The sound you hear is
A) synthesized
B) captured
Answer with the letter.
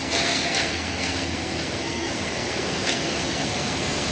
A